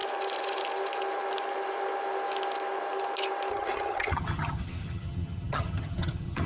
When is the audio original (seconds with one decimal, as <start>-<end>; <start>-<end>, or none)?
0.0-3.5